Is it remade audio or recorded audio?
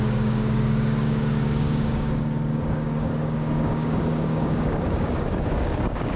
remade